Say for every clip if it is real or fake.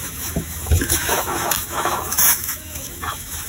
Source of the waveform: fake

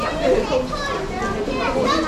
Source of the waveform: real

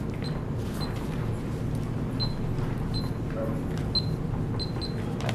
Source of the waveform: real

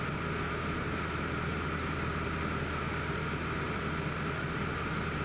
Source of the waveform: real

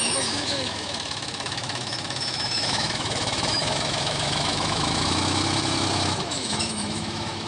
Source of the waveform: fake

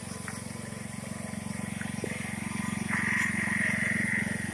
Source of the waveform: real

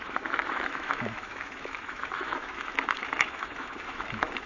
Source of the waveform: fake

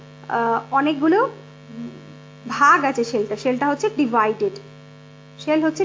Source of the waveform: real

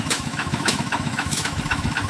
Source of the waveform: fake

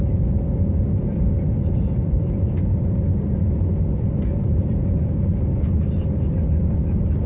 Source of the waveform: real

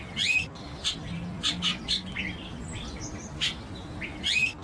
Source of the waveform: real